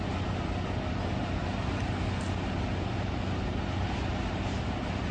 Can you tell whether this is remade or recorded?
recorded